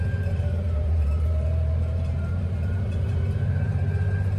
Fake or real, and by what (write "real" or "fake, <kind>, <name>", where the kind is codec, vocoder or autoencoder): fake, vocoder, BigVGAN v2